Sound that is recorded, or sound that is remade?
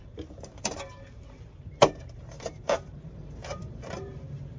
remade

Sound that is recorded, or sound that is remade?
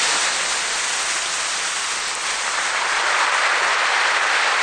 recorded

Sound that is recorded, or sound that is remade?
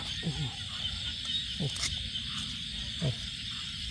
recorded